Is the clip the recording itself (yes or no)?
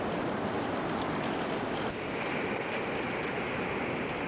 yes